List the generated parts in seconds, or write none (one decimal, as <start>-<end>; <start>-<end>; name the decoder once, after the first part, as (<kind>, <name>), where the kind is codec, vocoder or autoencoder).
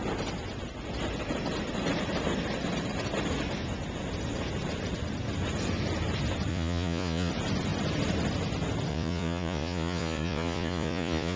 6.5-7.3 (vocoder, Vocos); 8.9-11.4